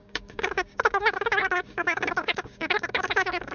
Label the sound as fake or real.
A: fake